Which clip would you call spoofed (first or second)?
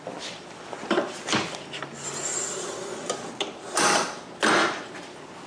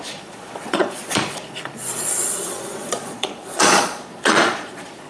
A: second